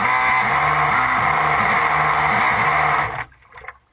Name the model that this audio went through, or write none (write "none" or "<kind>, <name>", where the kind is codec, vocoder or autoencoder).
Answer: none